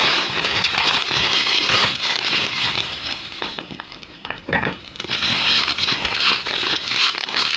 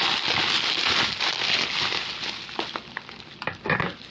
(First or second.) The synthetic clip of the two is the first